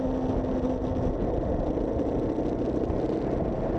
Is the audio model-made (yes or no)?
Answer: no